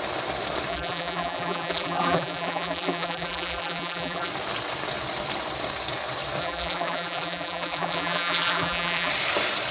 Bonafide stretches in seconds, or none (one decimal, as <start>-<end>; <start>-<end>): 0.0-0.7; 4.3-6.4; 9.1-9.7